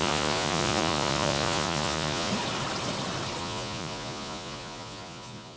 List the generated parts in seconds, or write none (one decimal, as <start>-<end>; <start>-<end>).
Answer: 0.0-2.3; 3.4-5.6